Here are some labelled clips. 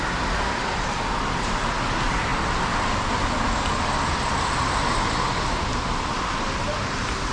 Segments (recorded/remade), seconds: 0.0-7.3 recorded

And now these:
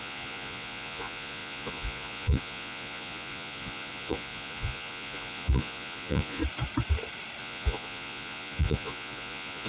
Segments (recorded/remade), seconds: 0.0-6.4 remade; 6.4-7.4 recorded; 7.4-9.7 remade